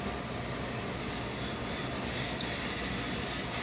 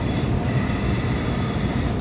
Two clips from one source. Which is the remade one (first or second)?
second